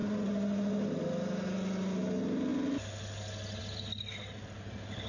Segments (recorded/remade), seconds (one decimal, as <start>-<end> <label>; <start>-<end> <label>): 0.0-5.1 recorded